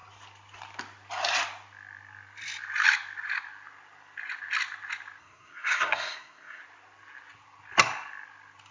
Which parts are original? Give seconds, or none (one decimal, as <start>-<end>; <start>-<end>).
0.0-5.2; 6.6-8.7